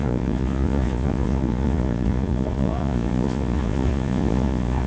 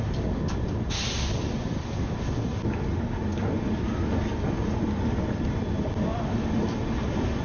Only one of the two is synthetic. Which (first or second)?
first